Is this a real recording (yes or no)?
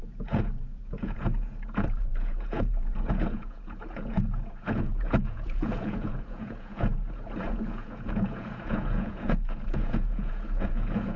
no